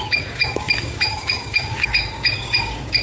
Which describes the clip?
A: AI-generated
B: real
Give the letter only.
A